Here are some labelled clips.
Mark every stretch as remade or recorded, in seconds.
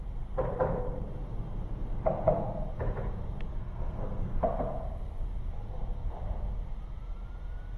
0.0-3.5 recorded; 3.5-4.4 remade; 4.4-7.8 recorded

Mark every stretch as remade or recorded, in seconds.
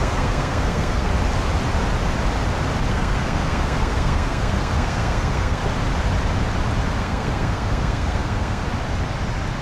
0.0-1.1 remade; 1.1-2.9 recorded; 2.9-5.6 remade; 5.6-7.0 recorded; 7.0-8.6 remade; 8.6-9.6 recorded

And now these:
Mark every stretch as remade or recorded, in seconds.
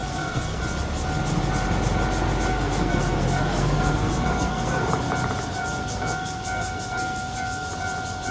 0.0-0.6 remade; 0.6-2.5 recorded; 2.5-4.9 remade; 4.9-5.5 recorded; 5.5-7.7 remade; 7.7-8.3 recorded